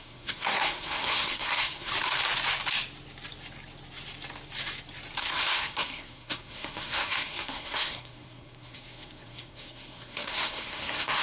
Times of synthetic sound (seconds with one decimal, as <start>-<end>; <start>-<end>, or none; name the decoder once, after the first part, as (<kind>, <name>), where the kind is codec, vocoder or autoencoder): 0.0-1.9 (codec, SNAC); 5.2-11.2